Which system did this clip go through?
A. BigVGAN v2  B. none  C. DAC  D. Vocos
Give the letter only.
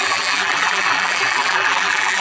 A